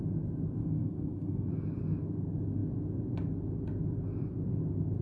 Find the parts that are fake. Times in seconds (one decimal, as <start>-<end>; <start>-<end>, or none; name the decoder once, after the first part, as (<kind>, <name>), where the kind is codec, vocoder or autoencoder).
0.6-1.5 (codec, SNAC)